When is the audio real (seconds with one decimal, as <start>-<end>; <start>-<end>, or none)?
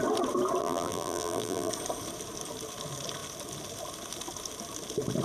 0.0-0.6; 1.7-5.2